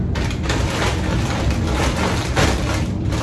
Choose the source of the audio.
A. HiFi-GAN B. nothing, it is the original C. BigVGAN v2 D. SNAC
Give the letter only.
B